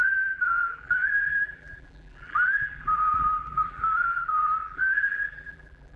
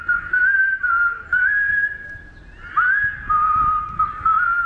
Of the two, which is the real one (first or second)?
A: second